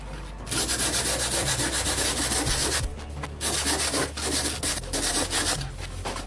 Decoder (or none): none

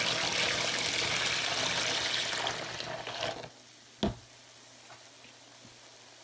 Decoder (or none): none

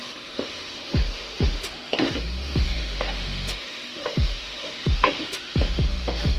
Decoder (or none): autoencoder, DAC-VAE